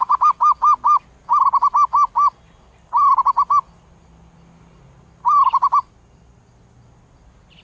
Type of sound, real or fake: real